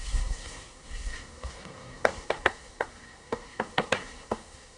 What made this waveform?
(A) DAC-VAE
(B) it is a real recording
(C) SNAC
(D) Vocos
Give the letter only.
C